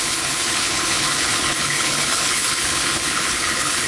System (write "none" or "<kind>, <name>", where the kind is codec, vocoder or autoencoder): codec, HILCodec